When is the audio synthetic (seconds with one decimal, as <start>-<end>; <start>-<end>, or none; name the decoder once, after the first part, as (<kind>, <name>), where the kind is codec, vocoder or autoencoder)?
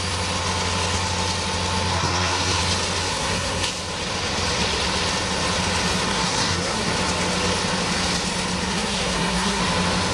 1.9-2.6 (codec, SNAC); 3.0-3.7; 6.1-6.9; 8.7-9.6